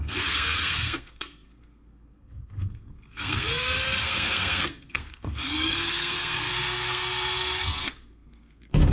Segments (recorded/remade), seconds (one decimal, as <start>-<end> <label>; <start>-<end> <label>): 0.0-8.9 remade